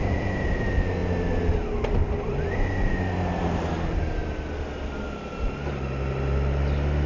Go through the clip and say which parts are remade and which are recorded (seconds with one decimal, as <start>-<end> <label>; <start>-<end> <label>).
0.0-7.1 recorded